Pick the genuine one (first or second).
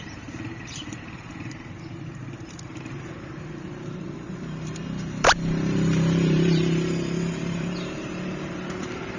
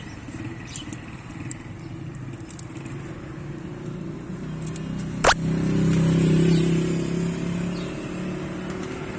second